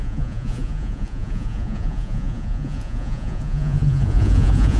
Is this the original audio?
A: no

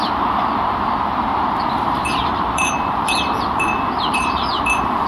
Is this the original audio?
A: no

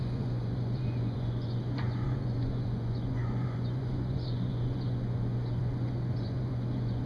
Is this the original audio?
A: no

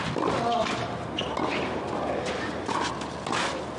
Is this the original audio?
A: yes